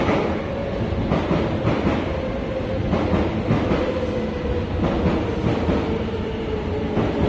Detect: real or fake real